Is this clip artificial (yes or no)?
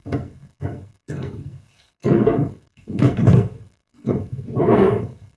yes